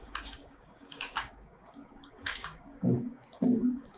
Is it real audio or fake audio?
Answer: fake